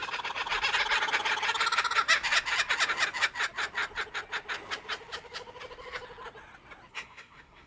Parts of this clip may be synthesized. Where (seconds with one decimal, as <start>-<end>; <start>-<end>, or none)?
6.9-7.7